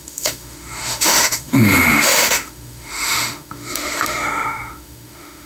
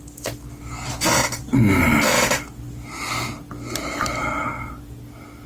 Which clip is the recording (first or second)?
second